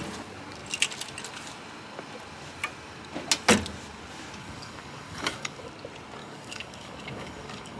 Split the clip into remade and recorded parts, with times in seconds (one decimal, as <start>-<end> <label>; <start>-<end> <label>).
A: 0.0-4.4 recorded; 4.4-5.7 remade; 5.7-6.2 recorded; 6.2-7.8 remade